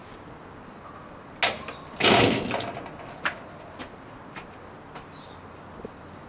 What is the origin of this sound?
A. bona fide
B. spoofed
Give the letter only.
A